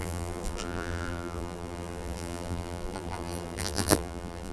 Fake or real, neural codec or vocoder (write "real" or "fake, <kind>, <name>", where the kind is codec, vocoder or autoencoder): fake, vocoder, BigVGAN v2